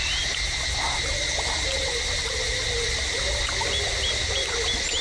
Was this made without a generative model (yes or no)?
yes